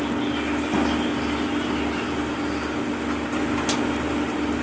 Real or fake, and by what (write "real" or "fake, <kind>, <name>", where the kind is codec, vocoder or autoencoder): real